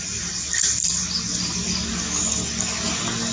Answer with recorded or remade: recorded